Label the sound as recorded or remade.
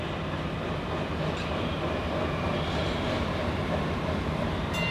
recorded